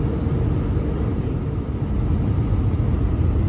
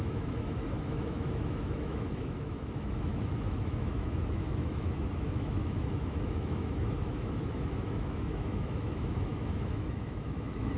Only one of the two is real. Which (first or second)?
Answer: first